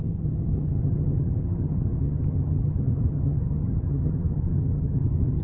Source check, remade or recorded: remade